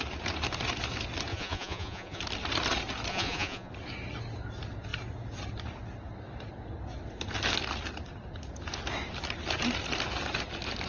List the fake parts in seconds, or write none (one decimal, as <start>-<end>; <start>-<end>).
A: 1.3-2.2; 3.1-3.7